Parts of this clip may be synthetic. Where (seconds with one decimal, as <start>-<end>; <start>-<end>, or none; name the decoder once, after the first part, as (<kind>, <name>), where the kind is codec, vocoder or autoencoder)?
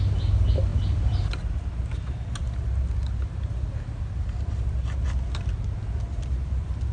none